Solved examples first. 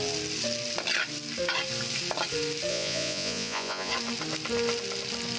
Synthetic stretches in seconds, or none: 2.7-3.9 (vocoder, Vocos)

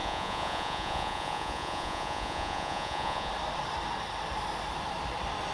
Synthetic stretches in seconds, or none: 0.0-3.3 (vocoder, Vocos)

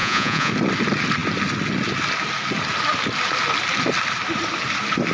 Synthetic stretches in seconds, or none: 0.0-0.5 (vocoder, Vocos)

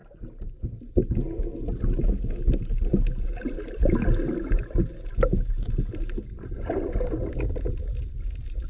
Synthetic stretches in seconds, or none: none

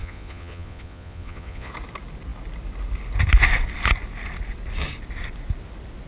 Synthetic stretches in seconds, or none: 0.0-1.7 (vocoder, Vocos)

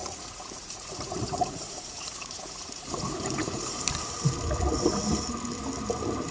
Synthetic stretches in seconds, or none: 0.0-3.8 (vocoder, Vocos)

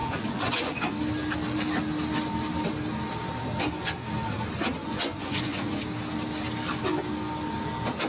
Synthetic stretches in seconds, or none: 0.0-0.9 (vocoder, Vocos); 4.8-5.8

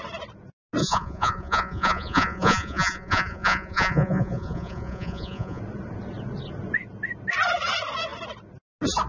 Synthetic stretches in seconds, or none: 0.8-5.6 (vocoder, Vocos)